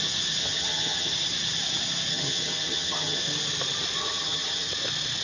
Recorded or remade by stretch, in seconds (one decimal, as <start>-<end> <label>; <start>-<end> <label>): 0.0-0.4 recorded; 0.4-1.1 remade; 1.1-2.1 recorded; 2.1-3.2 remade; 3.2-4.0 recorded; 4.0-4.7 remade; 4.7-5.2 recorded